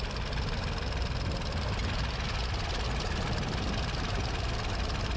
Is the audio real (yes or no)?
yes